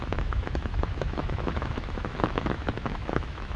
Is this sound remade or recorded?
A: remade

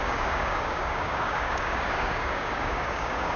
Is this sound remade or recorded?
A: remade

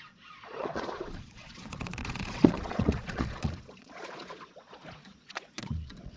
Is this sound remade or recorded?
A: remade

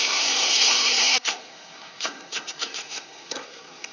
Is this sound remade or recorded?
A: remade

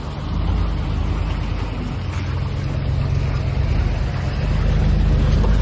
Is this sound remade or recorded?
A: recorded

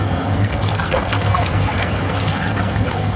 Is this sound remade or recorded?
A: remade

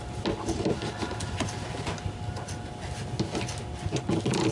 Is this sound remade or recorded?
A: recorded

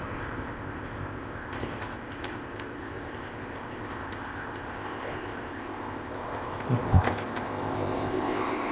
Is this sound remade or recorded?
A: remade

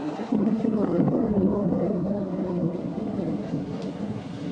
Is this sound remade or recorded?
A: remade